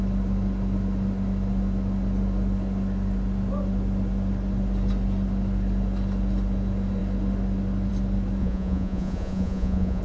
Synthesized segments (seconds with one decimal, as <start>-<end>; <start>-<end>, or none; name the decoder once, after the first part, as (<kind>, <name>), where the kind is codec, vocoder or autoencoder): 8.4-10.0 (vocoder, Vocos)